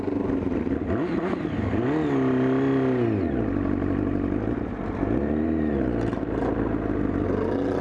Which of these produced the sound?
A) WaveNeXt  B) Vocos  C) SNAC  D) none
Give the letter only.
D